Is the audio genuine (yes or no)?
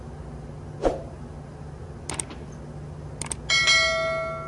yes